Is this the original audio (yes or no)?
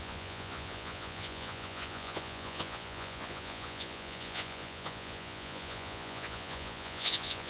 no